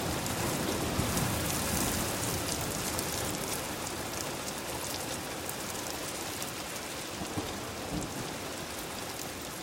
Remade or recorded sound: recorded